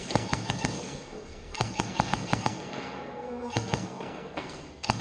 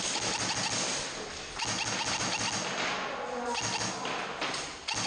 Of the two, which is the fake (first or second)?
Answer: first